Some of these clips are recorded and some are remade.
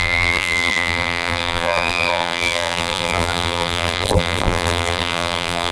remade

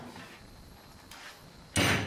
recorded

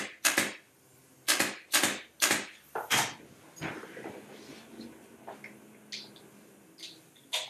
recorded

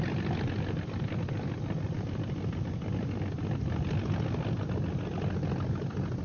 recorded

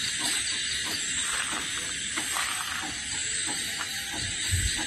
recorded